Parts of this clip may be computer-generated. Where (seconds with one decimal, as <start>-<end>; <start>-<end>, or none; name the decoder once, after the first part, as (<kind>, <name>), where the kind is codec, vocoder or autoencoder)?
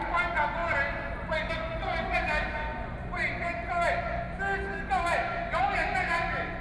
none